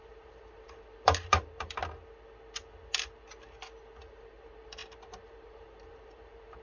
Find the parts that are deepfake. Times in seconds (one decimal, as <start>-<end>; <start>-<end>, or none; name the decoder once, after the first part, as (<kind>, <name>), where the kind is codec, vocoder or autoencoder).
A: 0.0-1.8 (vocoder, BigVGAN v2); 4.0-6.6